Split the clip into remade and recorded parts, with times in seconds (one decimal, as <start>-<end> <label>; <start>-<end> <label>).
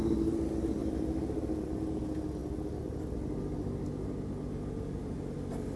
0.0-0.8 recorded; 0.8-1.4 remade; 1.4-5.8 recorded